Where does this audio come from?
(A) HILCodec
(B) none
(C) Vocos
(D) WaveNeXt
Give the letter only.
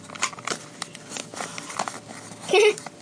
B